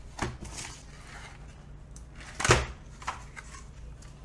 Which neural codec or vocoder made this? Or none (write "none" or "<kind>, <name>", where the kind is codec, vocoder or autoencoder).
none